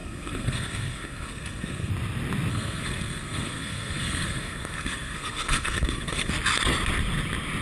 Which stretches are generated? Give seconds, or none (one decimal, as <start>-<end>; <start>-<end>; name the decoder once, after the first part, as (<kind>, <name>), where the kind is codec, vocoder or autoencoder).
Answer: 0.0-1.9 (codec, SNAC); 2.5-6.3